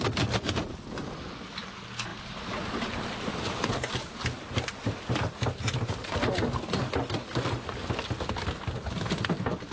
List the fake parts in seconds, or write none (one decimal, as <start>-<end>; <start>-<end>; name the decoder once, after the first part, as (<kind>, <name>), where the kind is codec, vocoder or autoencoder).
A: none